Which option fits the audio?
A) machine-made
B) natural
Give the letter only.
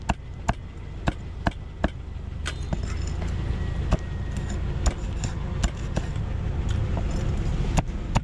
B